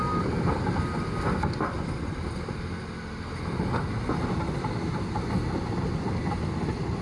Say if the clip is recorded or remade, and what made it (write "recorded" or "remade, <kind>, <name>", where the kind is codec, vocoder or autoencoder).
recorded